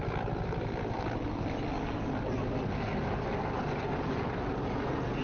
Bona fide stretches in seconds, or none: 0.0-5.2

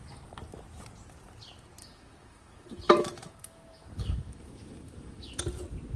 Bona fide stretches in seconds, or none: 0.0-1.8; 5.4-6.0

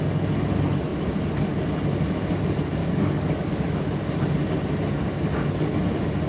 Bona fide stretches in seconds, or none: 0.0-2.8; 3.9-6.3

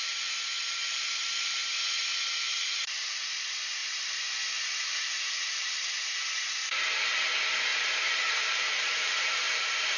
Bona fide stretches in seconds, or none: 1.6-2.4